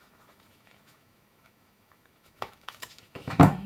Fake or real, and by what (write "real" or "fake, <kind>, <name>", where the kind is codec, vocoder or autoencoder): fake, autoencoder, DAC-VAE